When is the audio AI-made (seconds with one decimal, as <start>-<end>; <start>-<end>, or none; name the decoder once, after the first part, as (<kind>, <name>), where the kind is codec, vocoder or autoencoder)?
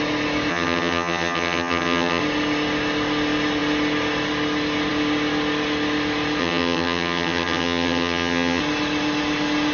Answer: 0.5-2.2 (vocoder, HiFi-GAN); 6.4-8.6